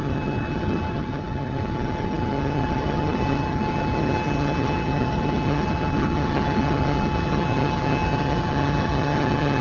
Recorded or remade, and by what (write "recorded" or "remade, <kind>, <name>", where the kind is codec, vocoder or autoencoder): remade, vocoder, HiFi-GAN